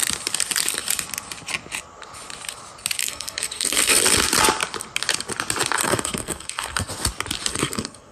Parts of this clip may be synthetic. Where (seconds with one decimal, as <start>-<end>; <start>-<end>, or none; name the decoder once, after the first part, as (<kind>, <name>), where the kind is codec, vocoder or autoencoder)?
3.0-4.0 (codec, SNAC); 5.8-6.9; 7.5-8.1